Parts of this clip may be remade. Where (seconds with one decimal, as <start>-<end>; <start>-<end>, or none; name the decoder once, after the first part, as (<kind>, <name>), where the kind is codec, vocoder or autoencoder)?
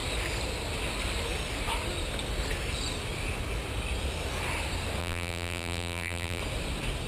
5.0-6.4 (vocoder, BigVGAN v2)